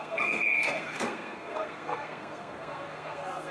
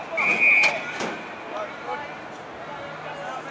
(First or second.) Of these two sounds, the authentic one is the second